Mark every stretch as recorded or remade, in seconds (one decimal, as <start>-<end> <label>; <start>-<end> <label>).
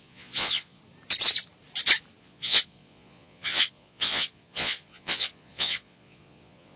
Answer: 0.0-0.8 remade; 0.8-2.2 recorded; 2.2-6.8 remade